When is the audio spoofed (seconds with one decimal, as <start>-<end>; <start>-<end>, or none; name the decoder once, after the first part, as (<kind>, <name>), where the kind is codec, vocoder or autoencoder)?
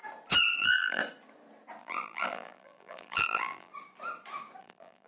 0.6-1.0 (vocoder, BigVGAN v2); 1.8-3.7; 4.6-5.1